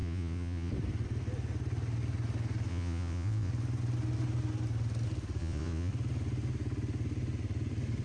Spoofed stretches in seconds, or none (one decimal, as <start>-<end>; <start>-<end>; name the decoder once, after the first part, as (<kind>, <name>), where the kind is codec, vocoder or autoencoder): 0.0-0.7 (vocoder, Vocos); 2.7-3.5; 5.4-5.9